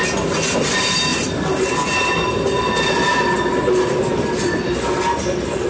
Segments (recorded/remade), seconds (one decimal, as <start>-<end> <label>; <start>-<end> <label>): 0.0-5.7 recorded